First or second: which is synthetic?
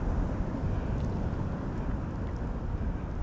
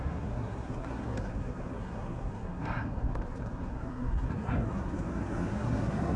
second